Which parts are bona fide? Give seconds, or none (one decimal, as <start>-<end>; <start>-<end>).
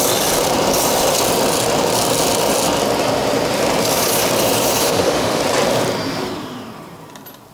0.0-4.8; 5.4-7.5